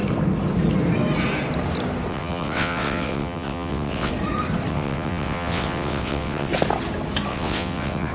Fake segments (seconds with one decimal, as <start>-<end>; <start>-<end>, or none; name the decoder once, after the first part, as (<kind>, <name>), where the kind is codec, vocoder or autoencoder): 2.1-4.1 (vocoder, WaveNeXt); 4.7-6.5; 7.3-8.1